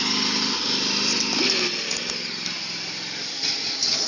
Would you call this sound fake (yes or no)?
no